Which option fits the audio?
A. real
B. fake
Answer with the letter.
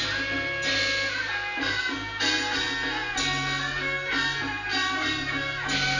A